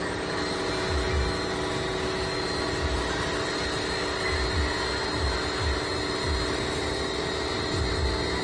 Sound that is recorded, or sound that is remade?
recorded